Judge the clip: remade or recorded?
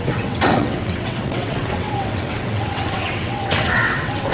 remade